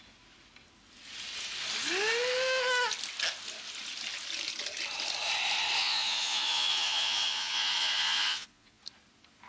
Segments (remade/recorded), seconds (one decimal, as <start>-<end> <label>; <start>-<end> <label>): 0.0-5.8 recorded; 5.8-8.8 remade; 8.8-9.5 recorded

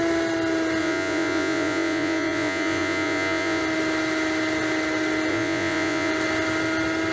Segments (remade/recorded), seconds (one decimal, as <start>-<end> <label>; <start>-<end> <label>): 0.0-0.8 recorded; 0.8-3.6 remade; 3.6-5.3 recorded; 5.3-6.1 remade; 6.1-7.1 recorded

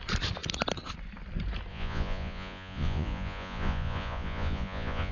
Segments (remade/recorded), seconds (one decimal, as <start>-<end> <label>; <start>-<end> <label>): 0.0-1.7 recorded; 1.7-5.1 remade

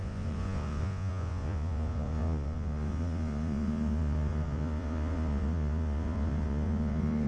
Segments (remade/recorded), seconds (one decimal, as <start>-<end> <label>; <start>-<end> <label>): 0.0-7.3 remade

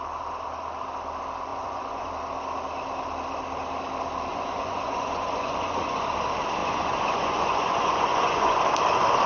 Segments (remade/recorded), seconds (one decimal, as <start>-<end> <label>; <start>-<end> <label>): 0.0-1.5 recorded; 1.5-2.1 remade; 2.1-4.3 recorded; 4.3-6.1 remade; 6.1-6.6 recorded; 6.6-8.6 remade; 8.6-9.3 recorded